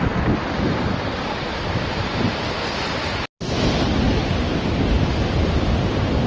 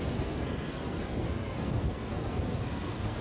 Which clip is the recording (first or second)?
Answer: first